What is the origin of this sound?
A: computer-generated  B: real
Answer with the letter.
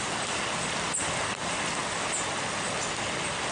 B